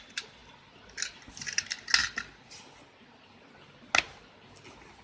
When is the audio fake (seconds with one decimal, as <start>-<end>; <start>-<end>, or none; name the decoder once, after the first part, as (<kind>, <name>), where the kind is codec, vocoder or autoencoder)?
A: none

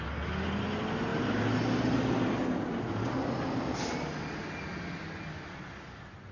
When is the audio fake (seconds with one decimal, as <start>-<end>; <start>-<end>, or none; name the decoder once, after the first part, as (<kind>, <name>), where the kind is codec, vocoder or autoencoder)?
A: none

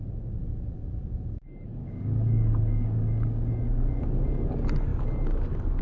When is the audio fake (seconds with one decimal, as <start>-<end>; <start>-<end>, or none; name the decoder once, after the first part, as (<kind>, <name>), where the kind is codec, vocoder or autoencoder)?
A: 1.8-4.0 (codec, DAC)

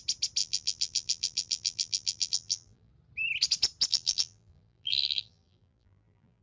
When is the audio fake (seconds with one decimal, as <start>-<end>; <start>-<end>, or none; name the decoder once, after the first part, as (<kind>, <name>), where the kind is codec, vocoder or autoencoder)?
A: 0.4-2.9 (vocoder, BigVGAN v2); 3.9-6.4

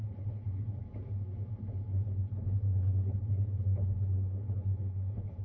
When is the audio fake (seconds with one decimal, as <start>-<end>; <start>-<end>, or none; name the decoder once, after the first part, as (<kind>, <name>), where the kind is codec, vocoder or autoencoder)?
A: 0.0-0.8 (codec, HILCodec); 1.9-5.4